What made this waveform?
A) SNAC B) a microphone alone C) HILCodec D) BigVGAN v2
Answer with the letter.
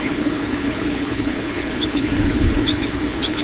C